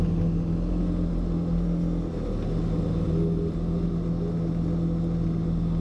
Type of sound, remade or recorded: recorded